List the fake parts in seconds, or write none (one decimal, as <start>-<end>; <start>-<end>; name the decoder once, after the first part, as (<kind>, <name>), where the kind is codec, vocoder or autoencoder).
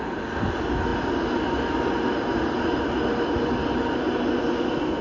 none